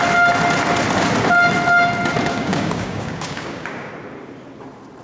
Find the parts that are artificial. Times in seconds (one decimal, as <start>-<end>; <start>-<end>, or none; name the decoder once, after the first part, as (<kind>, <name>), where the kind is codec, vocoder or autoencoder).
2.3-3.9 (codec, DAC)